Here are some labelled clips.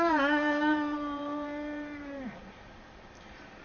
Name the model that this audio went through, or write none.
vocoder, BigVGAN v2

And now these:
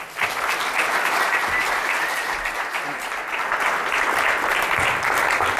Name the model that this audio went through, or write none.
none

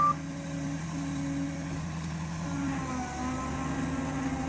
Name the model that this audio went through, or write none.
none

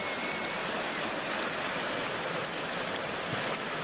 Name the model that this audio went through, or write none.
none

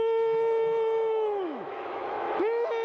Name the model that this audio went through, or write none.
autoencoder, DAC-VAE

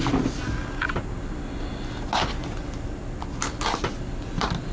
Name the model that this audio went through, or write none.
none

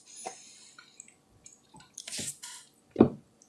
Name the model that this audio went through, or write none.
none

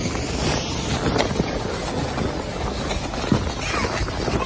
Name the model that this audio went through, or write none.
none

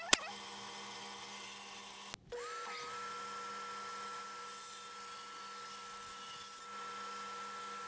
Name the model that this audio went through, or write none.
none